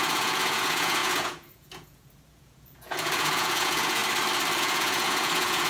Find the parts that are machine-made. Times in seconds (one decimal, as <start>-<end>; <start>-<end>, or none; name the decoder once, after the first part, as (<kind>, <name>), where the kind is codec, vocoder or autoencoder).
0.0-4.0 (vocoder, Vocos); 4.6-5.7